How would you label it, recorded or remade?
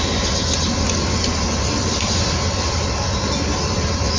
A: remade